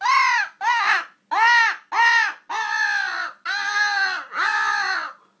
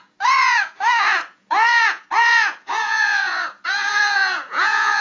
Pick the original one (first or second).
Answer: first